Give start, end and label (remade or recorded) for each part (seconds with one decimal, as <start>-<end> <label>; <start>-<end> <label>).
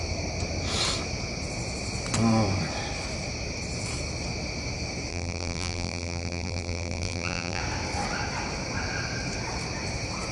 0.0-5.1 recorded; 5.1-7.6 remade; 7.6-10.3 recorded